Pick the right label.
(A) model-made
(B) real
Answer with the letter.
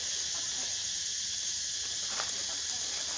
B